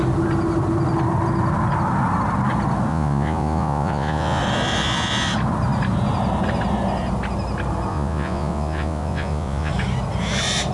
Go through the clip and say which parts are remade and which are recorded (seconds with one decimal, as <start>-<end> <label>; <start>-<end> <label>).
0.0-2.9 recorded; 2.9-4.4 remade; 4.4-7.9 recorded; 7.9-9.7 remade; 9.7-10.7 recorded